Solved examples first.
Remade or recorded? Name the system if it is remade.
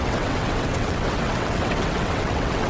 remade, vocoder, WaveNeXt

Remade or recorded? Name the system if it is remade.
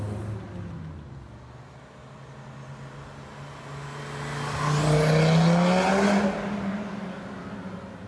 recorded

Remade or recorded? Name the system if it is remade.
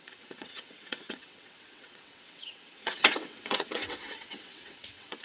remade, vocoder, WaveNeXt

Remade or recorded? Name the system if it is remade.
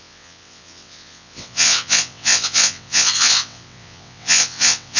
remade, vocoder, WaveNeXt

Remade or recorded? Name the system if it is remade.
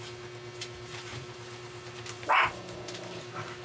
recorded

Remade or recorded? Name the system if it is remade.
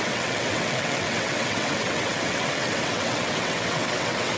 remade, vocoder, WaveNeXt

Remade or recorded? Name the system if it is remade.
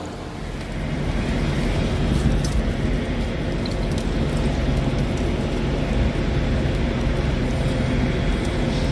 recorded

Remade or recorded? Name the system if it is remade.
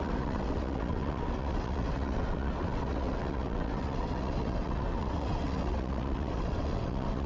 remade, vocoder, WaveNeXt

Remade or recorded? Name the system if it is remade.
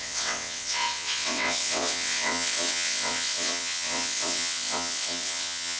remade, vocoder, WaveNeXt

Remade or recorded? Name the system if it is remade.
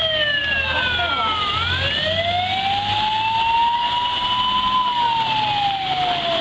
recorded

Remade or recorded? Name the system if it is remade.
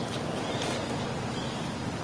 recorded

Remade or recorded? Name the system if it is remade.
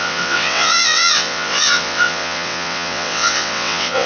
remade, vocoder, WaveNeXt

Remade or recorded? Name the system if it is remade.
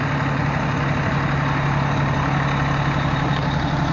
recorded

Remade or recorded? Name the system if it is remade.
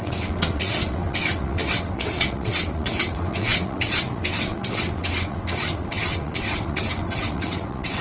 remade, vocoder, WaveNeXt